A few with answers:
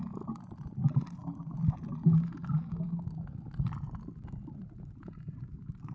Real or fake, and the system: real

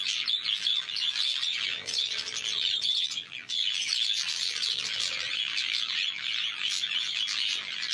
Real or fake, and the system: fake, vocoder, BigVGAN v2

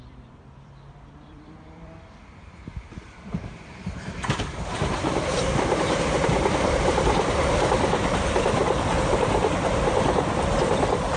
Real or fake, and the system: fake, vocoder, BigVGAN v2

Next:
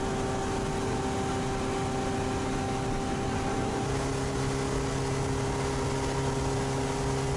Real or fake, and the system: real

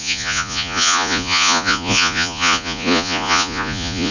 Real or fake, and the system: fake, vocoder, Vocos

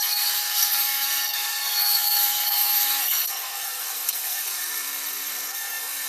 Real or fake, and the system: fake, codec, SNAC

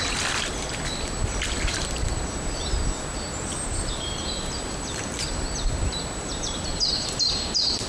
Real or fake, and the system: fake, vocoder, BigVGAN v2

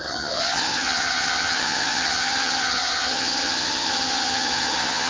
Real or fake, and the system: fake, vocoder, HiFi-GAN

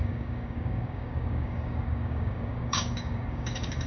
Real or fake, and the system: fake, codec, DAC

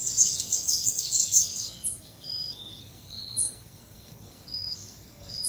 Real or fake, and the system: fake, codec, SNAC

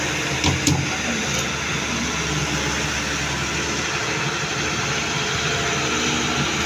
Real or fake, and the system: real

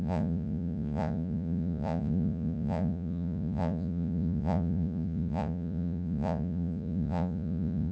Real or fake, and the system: fake, vocoder, Vocos